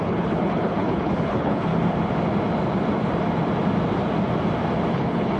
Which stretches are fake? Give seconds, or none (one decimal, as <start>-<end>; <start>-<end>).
0.0-1.7; 4.9-5.4